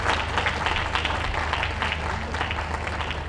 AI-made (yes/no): no